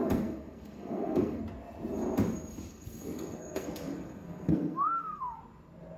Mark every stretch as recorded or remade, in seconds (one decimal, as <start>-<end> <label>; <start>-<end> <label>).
0.0-1.4 remade; 1.4-2.7 recorded; 2.7-5.4 remade; 5.4-6.0 recorded